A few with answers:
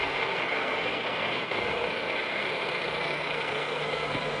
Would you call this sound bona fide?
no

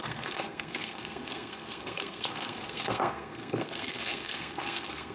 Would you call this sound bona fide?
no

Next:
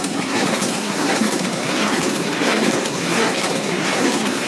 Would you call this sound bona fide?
no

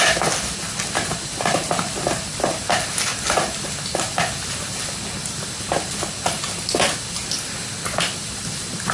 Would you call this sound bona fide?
yes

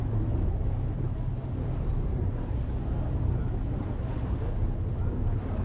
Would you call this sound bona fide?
yes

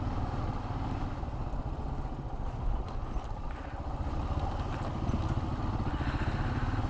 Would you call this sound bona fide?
yes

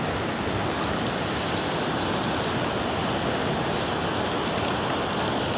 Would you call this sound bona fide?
yes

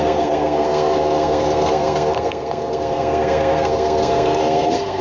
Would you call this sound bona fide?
no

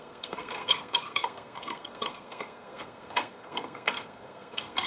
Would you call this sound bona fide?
no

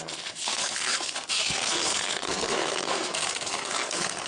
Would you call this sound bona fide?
no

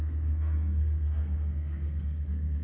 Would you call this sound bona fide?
no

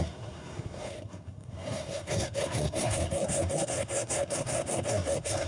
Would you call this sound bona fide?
no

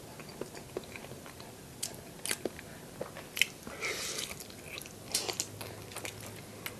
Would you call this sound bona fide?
yes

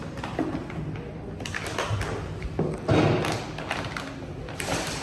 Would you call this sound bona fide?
yes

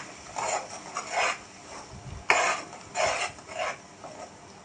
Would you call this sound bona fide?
yes